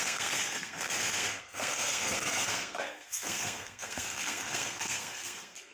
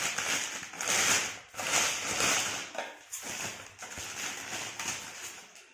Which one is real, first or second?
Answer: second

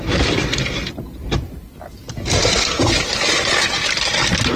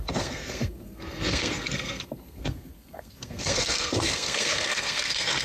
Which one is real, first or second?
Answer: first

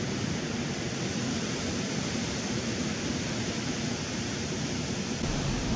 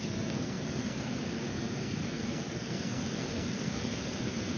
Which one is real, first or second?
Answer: first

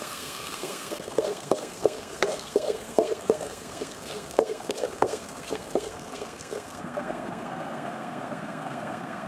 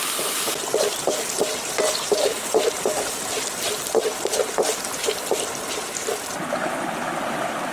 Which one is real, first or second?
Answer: second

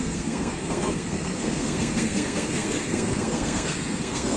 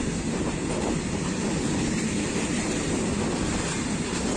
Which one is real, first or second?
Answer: second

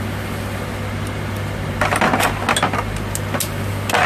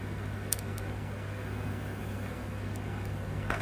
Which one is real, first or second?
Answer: first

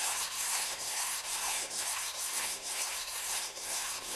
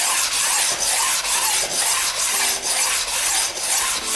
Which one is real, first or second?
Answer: second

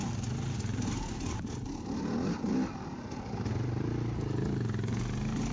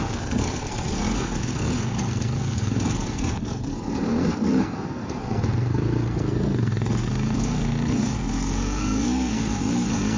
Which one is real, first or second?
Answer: first